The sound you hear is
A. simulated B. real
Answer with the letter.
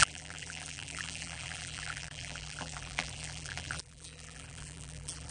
A